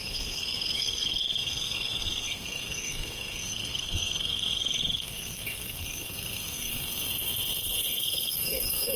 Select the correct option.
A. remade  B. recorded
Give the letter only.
A